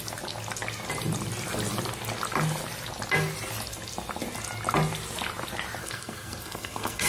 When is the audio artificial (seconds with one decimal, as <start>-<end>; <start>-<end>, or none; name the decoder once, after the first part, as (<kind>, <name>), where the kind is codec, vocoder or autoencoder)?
5.8-7.1 (codec, SNAC)

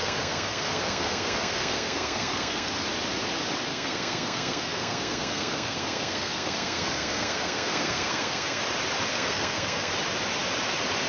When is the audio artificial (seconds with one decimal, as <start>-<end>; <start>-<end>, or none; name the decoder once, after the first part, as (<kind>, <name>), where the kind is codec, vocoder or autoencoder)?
0.0-2.7 (codec, SNAC); 3.7-8.6; 9.1-9.9

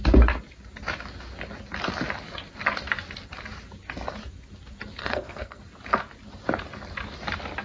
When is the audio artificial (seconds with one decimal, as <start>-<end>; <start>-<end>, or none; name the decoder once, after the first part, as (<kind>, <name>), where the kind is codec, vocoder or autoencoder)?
5.0-5.6 (codec, SNAC)